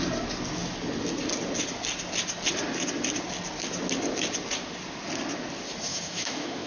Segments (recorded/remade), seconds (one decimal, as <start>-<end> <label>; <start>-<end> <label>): 0.0-5.9 recorded; 5.9-6.7 remade